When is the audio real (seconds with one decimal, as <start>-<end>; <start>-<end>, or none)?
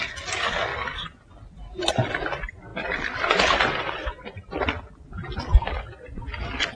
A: 0.0-6.7